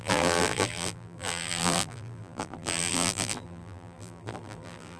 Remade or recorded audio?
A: remade